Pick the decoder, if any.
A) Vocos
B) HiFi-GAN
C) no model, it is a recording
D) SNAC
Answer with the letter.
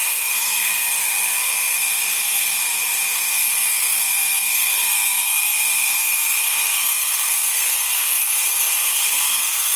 D